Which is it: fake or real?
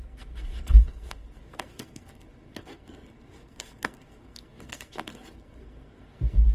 fake